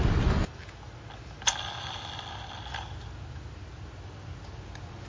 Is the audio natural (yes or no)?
yes